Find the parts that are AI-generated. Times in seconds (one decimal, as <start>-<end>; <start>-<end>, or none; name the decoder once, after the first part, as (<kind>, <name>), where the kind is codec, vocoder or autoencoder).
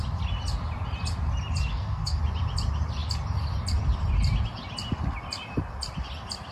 1.7-2.2 (codec, SNAC)